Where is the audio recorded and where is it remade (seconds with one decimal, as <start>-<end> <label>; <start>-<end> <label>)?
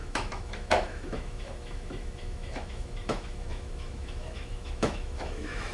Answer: 0.0-5.7 remade